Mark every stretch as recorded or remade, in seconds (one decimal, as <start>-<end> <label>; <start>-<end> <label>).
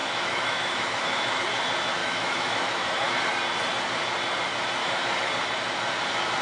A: 0.0-1.4 remade; 1.4-2.0 recorded; 2.0-3.1 remade; 3.1-4.8 recorded; 4.8-5.3 remade; 5.3-6.4 recorded